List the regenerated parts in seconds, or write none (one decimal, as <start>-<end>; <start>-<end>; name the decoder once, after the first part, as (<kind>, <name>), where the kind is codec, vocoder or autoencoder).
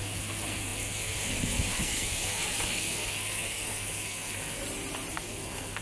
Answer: 0.0-4.6 (codec, SNAC); 5.1-5.8